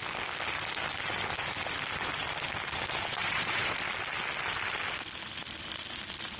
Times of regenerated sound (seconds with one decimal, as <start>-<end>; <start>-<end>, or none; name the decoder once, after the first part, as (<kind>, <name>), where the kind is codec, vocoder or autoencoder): 3.1-3.7 (vocoder, Vocos)